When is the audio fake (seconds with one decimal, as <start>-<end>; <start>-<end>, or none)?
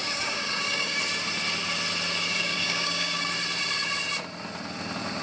0.0-1.0; 2.2-3.3